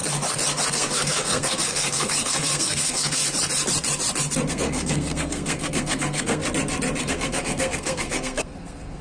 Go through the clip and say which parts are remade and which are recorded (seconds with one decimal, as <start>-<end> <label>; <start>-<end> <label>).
0.0-0.7 recorded; 0.7-3.2 remade; 3.2-4.5 recorded; 4.5-6.4 remade; 6.4-7.1 recorded; 7.1-9.0 remade

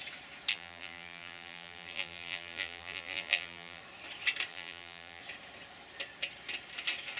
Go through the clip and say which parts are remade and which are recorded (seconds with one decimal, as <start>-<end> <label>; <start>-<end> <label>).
0.0-0.5 recorded; 0.5-3.8 remade; 3.8-4.5 recorded; 4.5-5.2 remade; 5.2-7.2 recorded

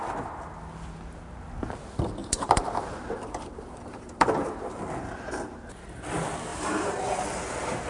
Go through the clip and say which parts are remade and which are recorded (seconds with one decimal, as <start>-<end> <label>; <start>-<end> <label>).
0.0-2.2 recorded; 2.2-4.8 remade; 4.8-6.5 recorded; 6.5-7.0 remade; 7.0-7.9 recorded

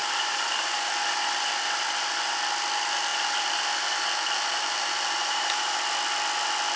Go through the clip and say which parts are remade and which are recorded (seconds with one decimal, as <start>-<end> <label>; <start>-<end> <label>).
0.0-0.9 remade; 0.9-5.2 recorded; 5.2-5.8 remade; 5.8-6.8 recorded